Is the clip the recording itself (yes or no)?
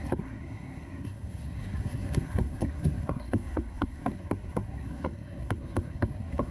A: no